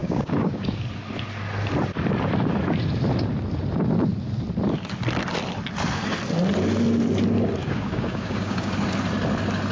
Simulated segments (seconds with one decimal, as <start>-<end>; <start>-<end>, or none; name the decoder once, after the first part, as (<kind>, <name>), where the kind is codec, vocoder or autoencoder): 0.0-0.8 (codec, DAC); 7.6-8.7

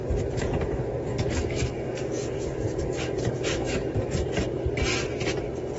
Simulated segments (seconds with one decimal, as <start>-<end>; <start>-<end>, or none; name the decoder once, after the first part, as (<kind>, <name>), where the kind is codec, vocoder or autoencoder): 1.1-4.6 (codec, DAC)

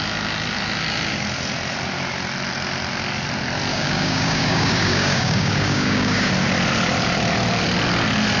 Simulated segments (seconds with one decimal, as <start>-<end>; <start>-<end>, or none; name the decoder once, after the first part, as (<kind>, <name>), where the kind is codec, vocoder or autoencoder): 3.7-6.3 (codec, DAC)

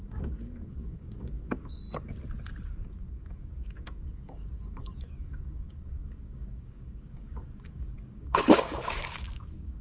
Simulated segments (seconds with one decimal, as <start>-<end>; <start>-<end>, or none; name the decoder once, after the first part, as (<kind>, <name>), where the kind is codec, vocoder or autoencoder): 0.0-1.8 (codec, DAC); 2.9-9.8

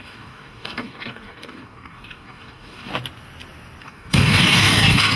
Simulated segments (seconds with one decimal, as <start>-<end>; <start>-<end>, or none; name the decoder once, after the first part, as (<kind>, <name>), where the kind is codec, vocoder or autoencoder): 0.0-2.9 (codec, DAC); 3.8-5.2

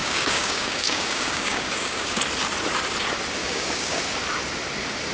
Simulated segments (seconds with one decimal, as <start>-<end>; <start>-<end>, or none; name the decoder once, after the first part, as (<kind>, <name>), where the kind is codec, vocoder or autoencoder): 0.0-2.2 (codec, DAC); 3.4-4.0

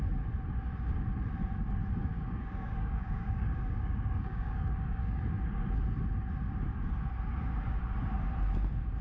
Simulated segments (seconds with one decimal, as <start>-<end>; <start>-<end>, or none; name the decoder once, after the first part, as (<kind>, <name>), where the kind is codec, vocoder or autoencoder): 2.0-5.2 (codec, DAC)